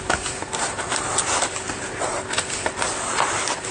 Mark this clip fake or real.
real